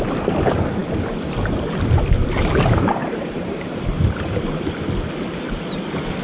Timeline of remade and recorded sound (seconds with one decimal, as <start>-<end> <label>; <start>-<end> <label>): 0.0-3.0 recorded; 3.0-4.6 remade; 4.6-6.2 recorded